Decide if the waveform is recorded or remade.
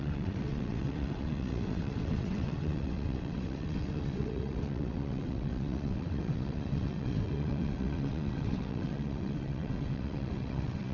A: remade